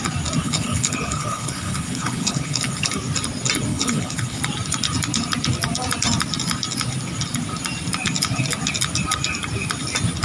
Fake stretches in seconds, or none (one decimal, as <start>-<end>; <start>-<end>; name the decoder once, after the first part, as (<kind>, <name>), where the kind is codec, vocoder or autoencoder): 0.4-2.9 (codec, HILCodec); 3.7-4.4